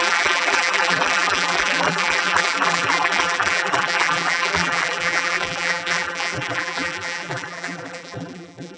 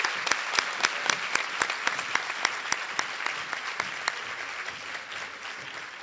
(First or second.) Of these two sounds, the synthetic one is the first